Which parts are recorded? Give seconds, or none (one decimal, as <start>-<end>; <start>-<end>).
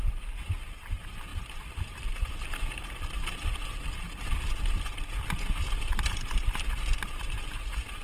0.0-1.3; 2.9-4.2; 5.3-8.0